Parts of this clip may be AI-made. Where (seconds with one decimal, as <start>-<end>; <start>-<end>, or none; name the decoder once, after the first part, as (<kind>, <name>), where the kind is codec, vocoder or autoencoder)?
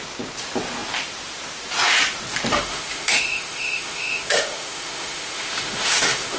2.5-6.4 (autoencoder, DAC-VAE)